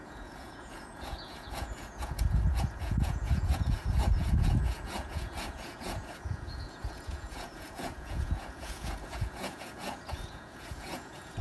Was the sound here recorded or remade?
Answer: remade